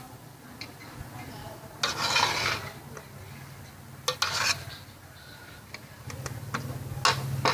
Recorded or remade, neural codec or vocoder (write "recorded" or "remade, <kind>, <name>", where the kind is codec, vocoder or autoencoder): recorded